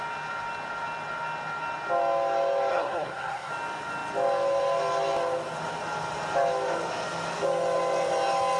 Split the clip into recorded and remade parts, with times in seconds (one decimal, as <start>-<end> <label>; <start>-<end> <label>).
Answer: 0.0-2.7 recorded; 2.7-3.5 remade; 3.5-8.6 recorded